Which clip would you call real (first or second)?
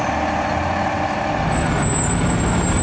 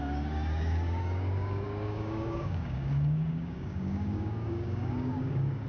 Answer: first